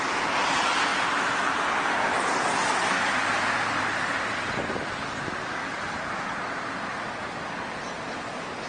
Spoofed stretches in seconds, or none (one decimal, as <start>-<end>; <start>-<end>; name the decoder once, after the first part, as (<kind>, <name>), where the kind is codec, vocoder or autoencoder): none